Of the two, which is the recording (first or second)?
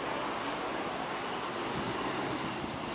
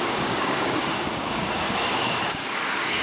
first